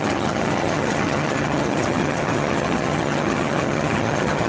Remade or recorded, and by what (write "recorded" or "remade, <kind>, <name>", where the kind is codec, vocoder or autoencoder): remade, vocoder, HiFi-GAN